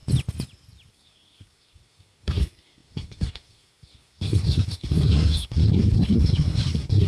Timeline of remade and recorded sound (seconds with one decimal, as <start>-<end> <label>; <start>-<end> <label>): 0.0-0.9 recorded; 0.9-7.1 remade